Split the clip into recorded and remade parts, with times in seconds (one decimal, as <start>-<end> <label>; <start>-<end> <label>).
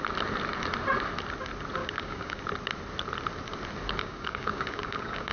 0.0-1.8 recorded; 1.8-2.4 remade; 2.4-4.0 recorded; 4.0-5.3 remade